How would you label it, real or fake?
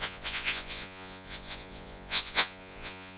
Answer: fake